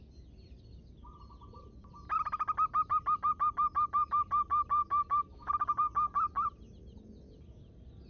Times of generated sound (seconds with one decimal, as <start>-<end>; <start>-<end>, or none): 4.8-5.5